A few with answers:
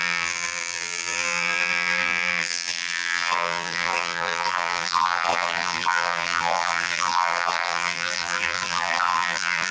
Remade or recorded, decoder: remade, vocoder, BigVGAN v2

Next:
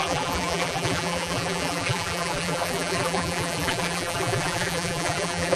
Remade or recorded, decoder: remade, vocoder, BigVGAN v2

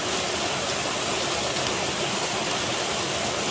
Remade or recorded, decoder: recorded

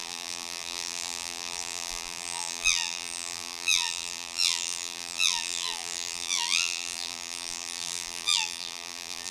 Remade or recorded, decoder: remade, vocoder, BigVGAN v2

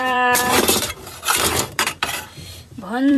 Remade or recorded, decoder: remade, vocoder, BigVGAN v2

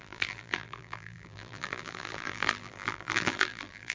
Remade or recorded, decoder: remade, vocoder, BigVGAN v2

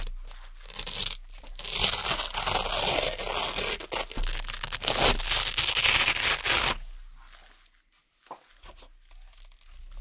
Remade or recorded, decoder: recorded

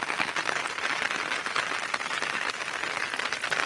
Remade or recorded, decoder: recorded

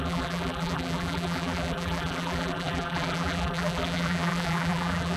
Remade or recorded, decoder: remade, vocoder, BigVGAN v2